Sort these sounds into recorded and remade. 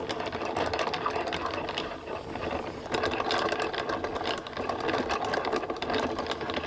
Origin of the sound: recorded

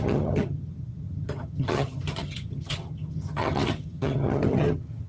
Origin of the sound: remade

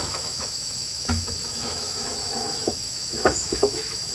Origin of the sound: remade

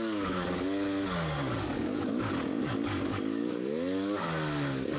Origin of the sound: remade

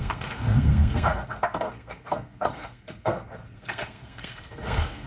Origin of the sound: remade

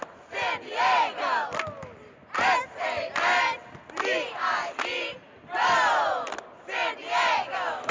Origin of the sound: recorded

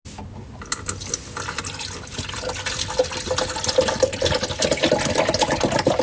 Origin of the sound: recorded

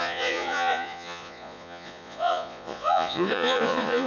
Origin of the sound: remade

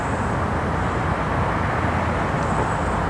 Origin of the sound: recorded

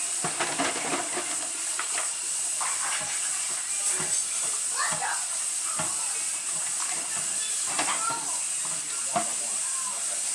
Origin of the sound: recorded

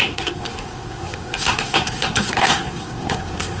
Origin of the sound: remade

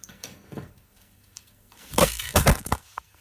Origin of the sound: remade